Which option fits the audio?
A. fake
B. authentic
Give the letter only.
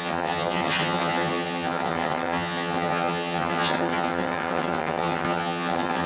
A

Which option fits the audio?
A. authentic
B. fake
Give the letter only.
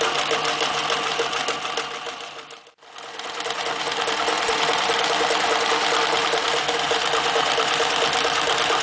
A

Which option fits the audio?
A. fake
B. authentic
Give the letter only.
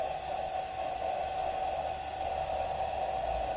B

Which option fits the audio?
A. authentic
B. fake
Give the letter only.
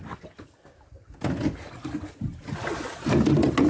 A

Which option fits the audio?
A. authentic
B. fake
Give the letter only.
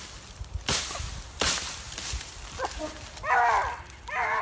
A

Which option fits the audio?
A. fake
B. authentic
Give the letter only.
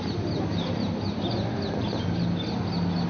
B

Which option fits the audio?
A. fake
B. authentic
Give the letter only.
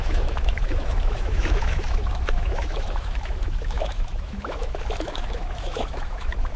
A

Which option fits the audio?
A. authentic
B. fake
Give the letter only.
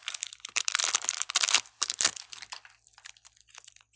B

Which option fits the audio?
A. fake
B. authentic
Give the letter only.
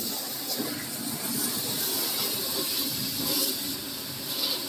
B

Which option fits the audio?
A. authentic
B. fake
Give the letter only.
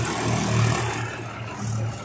A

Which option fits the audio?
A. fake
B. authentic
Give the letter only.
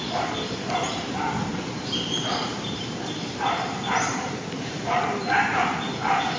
A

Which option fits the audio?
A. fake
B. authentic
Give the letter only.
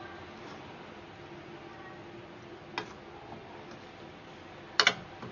B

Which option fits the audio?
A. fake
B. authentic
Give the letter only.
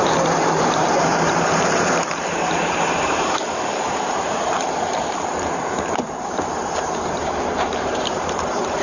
A